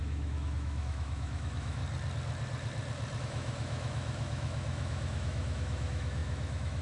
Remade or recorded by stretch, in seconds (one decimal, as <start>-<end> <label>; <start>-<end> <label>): 0.0-1.8 remade; 1.8-3.2 recorded; 3.2-6.8 remade